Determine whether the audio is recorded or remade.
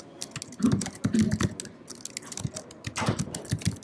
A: recorded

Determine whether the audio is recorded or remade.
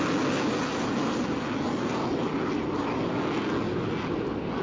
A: recorded